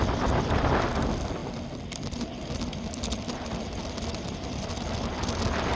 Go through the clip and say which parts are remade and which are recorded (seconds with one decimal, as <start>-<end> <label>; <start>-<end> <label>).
0.0-5.7 recorded